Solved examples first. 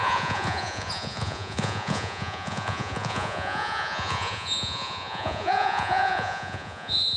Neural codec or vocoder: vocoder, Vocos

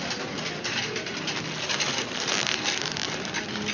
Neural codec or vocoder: none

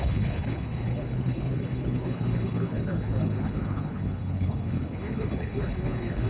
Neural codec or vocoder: codec, HILCodec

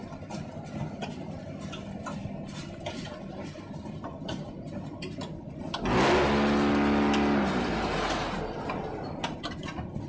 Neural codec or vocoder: none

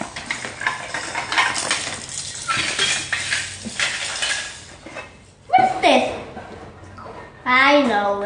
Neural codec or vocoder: none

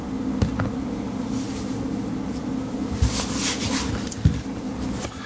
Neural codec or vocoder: none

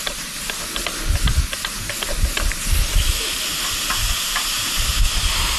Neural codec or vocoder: none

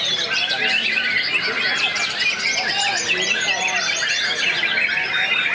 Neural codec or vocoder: none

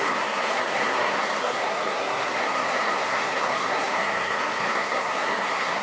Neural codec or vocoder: codec, SNAC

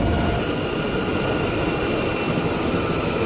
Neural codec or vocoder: none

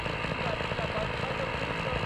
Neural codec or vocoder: none